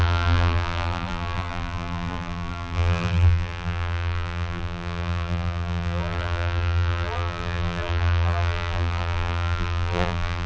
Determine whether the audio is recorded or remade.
remade